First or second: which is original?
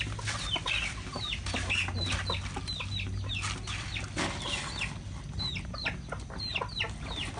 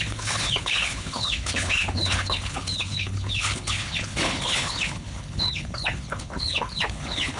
first